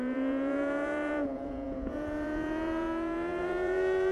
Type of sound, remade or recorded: remade